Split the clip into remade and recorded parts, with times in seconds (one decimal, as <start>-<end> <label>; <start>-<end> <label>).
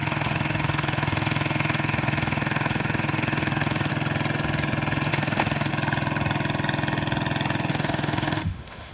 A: 0.0-3.9 remade; 3.9-5.1 recorded; 5.1-5.7 remade; 5.7-7.7 recorded; 7.7-8.9 remade